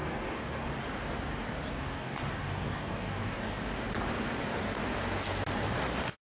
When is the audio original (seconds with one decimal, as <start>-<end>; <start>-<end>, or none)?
0.7-1.7; 3.6-6.2